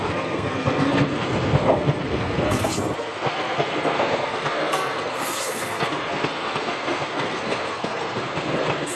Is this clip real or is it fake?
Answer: fake